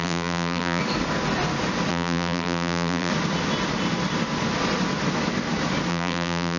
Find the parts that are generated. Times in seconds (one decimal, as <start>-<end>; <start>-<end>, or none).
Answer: 0.0-0.8; 1.9-3.1; 5.9-6.6